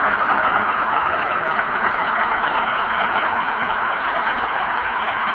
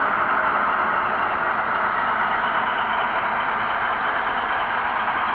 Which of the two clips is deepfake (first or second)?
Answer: first